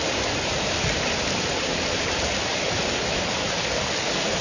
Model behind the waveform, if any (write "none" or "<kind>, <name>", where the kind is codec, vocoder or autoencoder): none